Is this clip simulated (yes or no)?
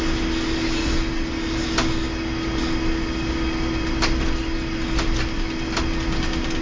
no